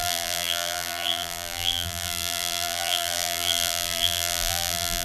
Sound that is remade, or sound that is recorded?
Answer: remade